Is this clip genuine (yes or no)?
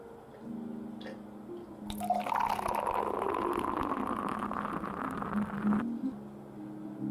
yes